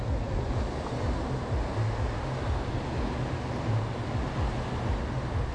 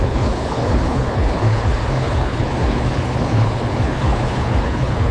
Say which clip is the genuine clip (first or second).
first